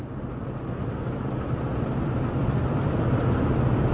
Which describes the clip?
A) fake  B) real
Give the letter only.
B